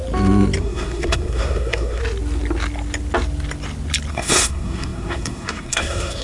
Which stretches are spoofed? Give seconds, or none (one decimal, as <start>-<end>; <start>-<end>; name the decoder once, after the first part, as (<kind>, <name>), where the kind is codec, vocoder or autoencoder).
0.6-2.0 (codec, SNAC); 4.1-6.2